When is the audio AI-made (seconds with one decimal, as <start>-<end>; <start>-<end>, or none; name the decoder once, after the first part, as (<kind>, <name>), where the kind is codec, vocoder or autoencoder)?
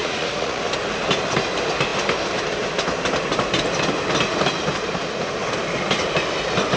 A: 0.0-0.7 (vocoder, Vocos)